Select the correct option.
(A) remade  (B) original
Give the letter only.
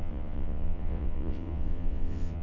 A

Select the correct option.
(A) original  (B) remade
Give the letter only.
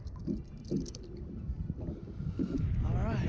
A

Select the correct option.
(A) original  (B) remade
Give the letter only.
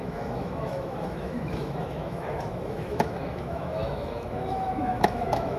B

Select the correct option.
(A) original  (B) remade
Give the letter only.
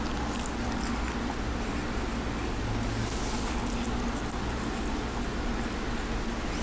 A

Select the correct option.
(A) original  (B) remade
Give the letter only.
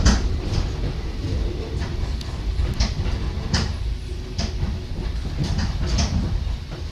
A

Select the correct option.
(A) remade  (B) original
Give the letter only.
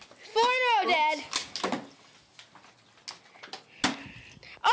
B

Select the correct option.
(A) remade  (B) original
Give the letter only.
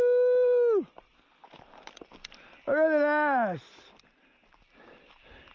B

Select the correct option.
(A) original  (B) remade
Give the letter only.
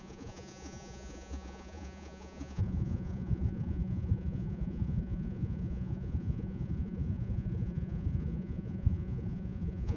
B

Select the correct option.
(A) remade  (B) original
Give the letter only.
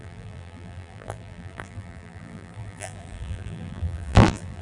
A